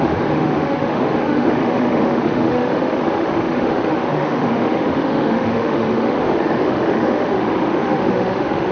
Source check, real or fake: fake